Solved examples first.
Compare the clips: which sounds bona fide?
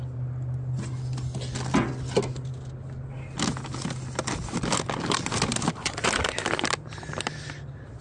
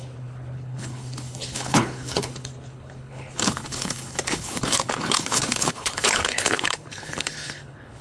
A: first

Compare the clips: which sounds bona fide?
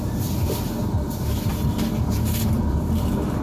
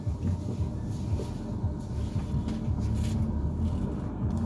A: second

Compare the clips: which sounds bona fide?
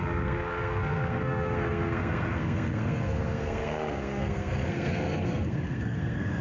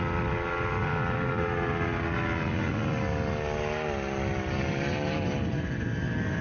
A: second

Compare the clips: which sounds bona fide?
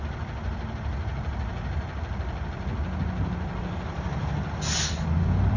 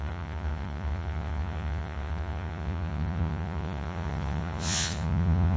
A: first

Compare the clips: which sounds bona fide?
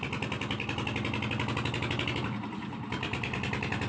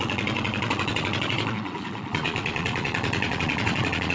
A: first